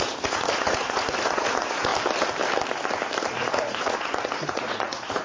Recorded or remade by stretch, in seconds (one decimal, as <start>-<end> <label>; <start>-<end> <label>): 0.0-1.9 remade; 1.9-3.3 recorded; 3.3-5.2 remade